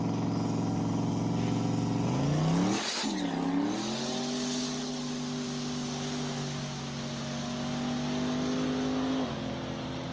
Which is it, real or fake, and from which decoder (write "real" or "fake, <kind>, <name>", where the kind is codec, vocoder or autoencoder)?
real